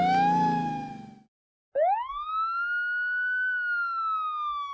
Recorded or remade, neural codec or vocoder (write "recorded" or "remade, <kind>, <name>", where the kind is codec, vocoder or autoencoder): recorded